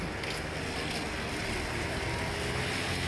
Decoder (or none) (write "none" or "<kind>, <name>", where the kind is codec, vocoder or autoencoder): none